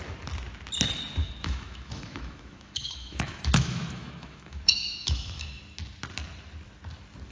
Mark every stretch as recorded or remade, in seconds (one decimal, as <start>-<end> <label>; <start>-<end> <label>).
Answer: 0.0-1.2 recorded; 1.2-5.6 remade; 5.6-7.3 recorded